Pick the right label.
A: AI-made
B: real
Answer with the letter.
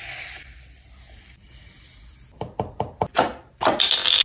B